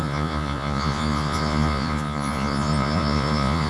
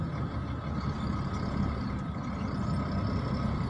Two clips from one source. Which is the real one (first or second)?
second